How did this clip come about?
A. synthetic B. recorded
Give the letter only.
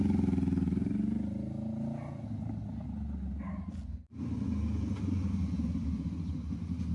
B